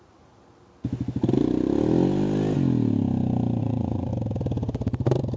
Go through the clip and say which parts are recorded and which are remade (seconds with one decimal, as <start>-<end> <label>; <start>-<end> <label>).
0.0-0.4 remade; 0.4-3.6 recorded; 3.6-4.1 remade; 4.1-5.4 recorded